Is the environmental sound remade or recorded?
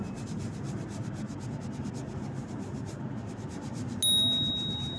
recorded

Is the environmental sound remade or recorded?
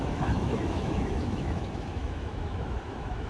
remade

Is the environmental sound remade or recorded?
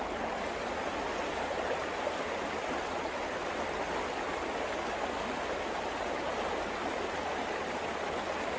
recorded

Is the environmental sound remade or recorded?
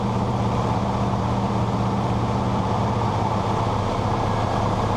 remade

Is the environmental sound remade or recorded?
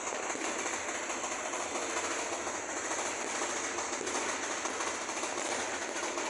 recorded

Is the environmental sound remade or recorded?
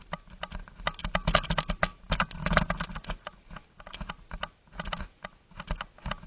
recorded